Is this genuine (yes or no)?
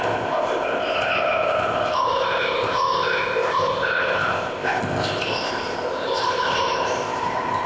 no